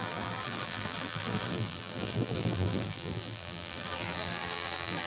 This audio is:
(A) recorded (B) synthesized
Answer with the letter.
B